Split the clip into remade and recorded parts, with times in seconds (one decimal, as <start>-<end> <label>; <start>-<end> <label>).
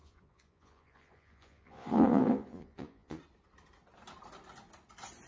0.0-3.2 remade; 3.2-5.3 recorded